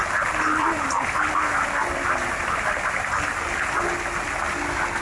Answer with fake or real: real